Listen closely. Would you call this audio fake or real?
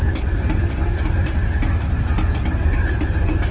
real